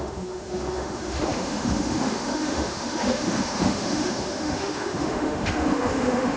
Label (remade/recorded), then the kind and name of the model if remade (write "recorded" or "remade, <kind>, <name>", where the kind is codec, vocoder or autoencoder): remade, autoencoder, DAC-VAE